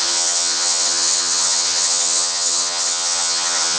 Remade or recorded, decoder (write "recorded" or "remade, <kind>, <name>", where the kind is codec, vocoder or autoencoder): remade, vocoder, HiFi-GAN